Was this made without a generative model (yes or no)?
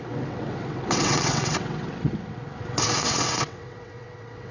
no